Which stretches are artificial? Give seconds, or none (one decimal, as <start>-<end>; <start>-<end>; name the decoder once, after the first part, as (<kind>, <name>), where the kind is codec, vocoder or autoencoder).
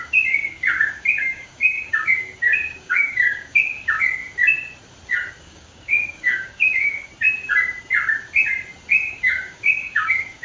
0.0-4.2 (codec, DAC); 5.4-7.1; 9.1-10.4